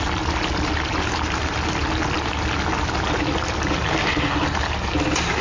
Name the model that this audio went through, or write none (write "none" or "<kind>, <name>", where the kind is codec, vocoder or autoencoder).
none